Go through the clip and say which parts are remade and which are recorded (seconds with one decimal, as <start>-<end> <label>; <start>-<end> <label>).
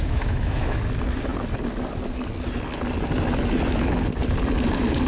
0.0-0.8 remade; 0.8-5.1 recorded